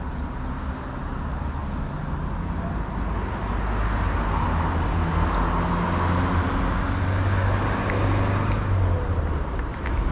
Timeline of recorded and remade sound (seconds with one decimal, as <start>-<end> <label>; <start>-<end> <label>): 0.0-10.1 recorded